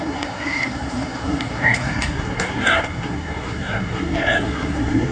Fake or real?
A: fake